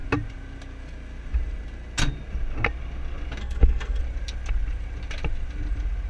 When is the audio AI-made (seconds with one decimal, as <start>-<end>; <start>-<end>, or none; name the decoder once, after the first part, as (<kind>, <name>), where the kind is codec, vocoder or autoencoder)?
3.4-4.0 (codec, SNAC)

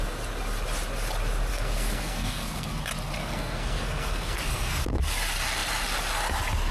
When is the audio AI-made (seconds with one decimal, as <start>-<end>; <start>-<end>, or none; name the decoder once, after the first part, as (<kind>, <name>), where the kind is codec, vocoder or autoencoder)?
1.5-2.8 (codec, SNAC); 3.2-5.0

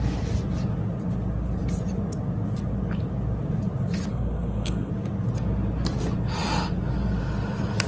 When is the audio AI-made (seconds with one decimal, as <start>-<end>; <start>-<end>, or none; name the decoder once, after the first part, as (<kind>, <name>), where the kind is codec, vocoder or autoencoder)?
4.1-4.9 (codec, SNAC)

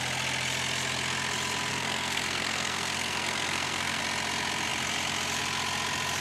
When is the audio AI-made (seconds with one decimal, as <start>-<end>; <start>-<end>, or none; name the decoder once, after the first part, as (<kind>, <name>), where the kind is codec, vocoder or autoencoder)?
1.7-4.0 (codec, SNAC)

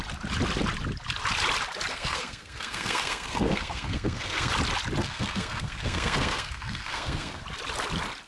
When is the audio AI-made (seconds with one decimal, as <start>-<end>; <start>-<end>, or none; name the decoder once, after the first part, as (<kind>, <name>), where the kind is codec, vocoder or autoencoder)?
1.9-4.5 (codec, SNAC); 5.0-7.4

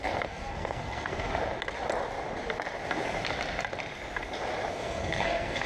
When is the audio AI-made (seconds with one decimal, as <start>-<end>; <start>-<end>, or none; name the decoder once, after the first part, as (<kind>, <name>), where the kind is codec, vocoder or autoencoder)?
0.0-1.3 (codec, SNAC); 4.7-5.7